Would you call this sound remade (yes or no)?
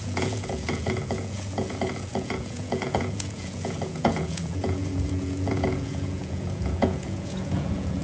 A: yes